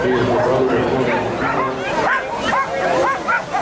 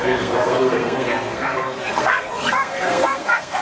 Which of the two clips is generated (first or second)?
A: second